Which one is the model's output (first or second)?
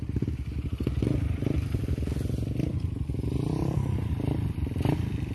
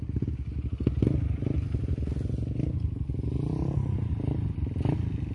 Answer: first